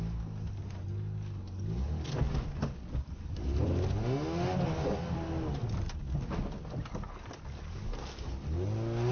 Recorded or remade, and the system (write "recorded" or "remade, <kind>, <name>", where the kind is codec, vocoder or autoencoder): recorded